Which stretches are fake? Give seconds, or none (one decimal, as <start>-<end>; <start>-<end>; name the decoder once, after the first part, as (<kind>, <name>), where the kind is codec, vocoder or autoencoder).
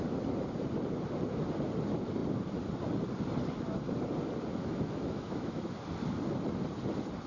4.5-5.8 (autoencoder, DAC-VAE)